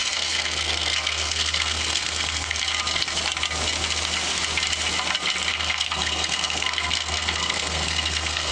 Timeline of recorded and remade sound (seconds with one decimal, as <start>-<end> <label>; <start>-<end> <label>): 0.0-2.6 remade; 2.6-5.5 recorded; 5.5-8.5 remade

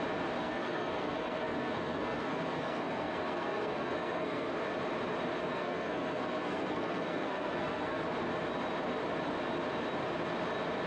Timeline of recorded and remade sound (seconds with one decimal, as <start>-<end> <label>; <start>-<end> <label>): 0.0-0.4 recorded; 0.4-4.6 remade; 4.6-5.4 recorded; 5.4-8.0 remade; 8.0-10.9 recorded

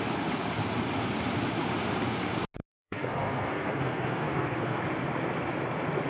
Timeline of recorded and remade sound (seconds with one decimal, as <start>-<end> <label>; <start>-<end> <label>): 0.0-2.7 recorded; 2.7-4.8 remade; 4.8-6.1 recorded